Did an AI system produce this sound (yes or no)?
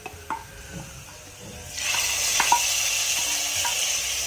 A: no